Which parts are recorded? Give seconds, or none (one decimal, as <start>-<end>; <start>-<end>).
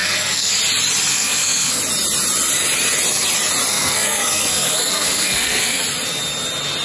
0.5-1.1; 1.8-3.7; 5.8-6.8